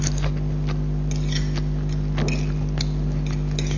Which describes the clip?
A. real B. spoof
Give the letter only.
A